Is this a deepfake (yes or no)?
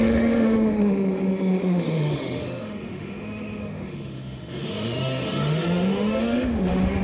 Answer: yes